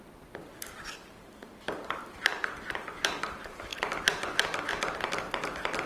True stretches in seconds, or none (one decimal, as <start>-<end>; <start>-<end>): 0.0-5.9